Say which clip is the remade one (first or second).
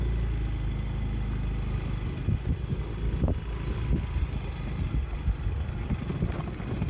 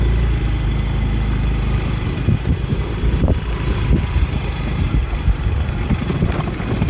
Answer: second